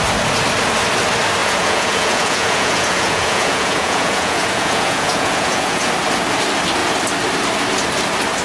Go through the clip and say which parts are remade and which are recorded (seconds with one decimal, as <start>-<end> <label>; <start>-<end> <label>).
0.0-1.4 recorded; 1.4-5.9 remade; 5.9-8.4 recorded